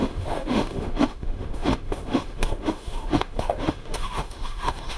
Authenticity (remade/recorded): remade